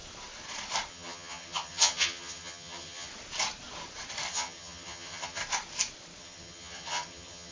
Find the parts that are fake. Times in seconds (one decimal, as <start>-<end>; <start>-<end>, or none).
0.9-3.1; 4.3-5.4; 6.2-7.5